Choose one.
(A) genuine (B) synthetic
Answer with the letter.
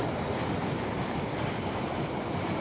B